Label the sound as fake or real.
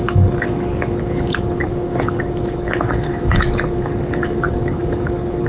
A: fake